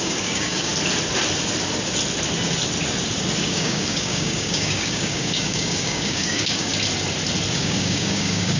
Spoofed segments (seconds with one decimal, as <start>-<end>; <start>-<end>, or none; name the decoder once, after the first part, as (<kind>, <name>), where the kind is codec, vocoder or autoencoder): 0.0-0.7 (codec, DAC); 3.4-6.7; 7.5-8.6